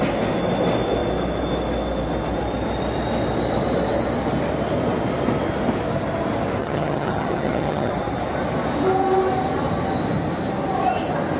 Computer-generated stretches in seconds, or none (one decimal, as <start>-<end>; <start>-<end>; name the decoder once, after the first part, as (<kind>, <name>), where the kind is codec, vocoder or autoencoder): 6.6-7.9 (vocoder, HiFi-GAN)